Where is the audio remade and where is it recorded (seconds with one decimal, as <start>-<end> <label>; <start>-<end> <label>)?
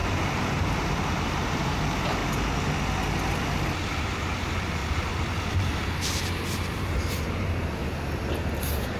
0.0-2.2 remade; 2.2-3.9 recorded; 3.9-4.8 remade; 4.8-5.5 recorded; 5.5-7.8 remade; 7.8-9.0 recorded